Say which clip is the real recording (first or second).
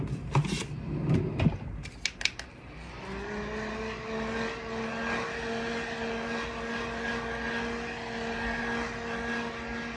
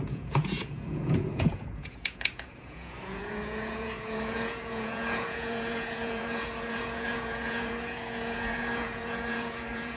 first